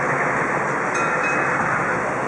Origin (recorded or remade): recorded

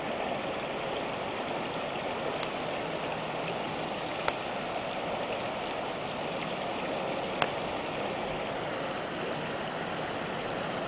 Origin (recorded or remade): recorded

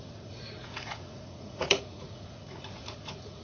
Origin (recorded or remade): remade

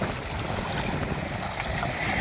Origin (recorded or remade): recorded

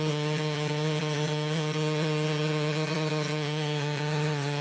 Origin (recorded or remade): remade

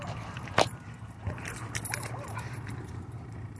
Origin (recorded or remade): remade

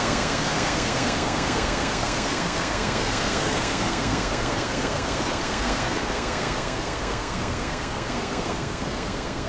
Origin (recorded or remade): remade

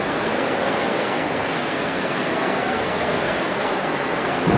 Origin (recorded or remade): remade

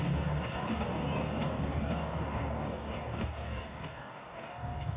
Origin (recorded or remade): remade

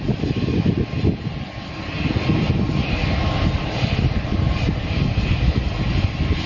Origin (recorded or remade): recorded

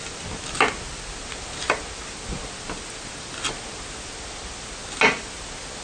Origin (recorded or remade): recorded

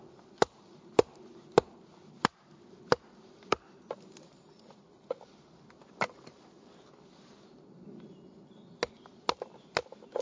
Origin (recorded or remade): recorded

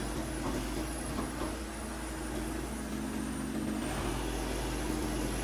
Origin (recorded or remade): recorded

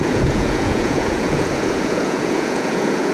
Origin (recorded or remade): remade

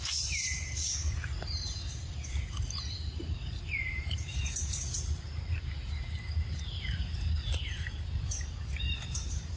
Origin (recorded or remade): remade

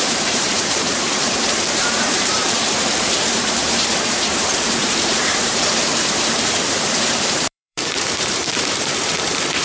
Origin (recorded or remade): remade